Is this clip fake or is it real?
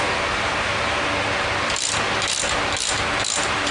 real